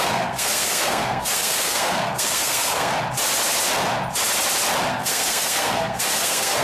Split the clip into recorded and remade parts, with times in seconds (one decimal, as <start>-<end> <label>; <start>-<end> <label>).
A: 0.0-2.9 remade; 2.9-4.9 recorded; 4.9-6.6 remade